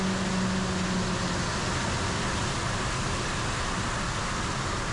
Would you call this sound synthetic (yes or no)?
no